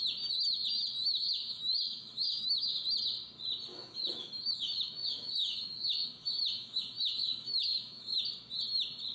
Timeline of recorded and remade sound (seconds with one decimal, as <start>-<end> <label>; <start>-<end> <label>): 0.0-1.0 recorded; 1.0-2.7 remade; 2.7-3.7 recorded; 3.7-8.2 remade; 8.2-9.1 recorded